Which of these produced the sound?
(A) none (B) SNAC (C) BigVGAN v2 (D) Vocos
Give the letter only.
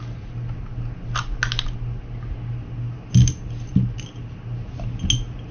A